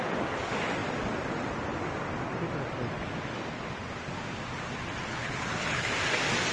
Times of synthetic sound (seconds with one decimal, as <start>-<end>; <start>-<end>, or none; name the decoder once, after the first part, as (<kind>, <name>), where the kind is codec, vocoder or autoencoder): 5.1-5.9 (codec, HILCodec)